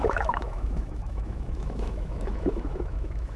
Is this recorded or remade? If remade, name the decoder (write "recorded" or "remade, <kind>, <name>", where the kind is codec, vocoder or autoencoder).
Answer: remade, autoencoder, DAC-VAE